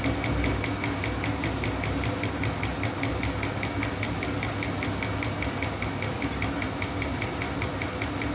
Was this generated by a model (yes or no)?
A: no